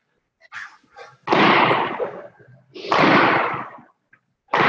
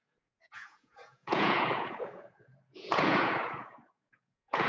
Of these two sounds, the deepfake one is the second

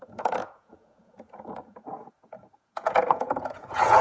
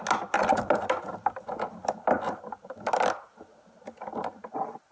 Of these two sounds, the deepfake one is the first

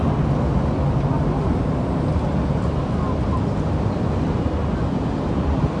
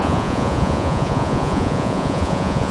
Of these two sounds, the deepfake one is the second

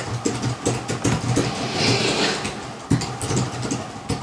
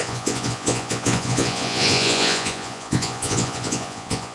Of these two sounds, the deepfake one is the second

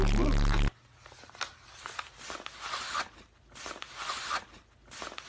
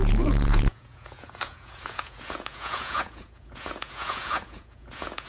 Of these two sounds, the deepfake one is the second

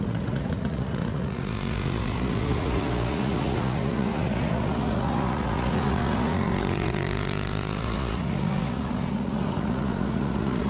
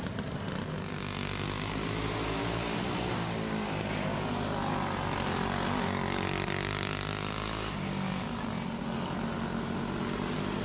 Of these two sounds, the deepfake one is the first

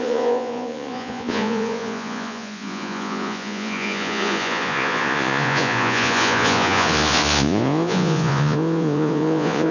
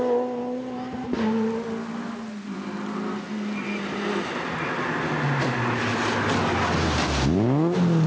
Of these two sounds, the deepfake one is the first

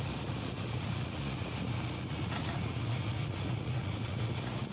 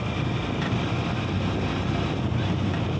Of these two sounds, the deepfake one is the first